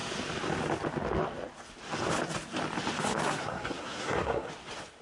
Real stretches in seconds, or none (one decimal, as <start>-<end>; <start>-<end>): 0.0-3.2; 4.5-5.0